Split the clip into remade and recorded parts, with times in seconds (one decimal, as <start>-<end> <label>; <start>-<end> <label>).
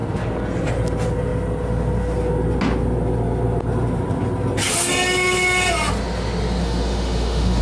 0.0-6.6 recorded; 6.6-7.6 remade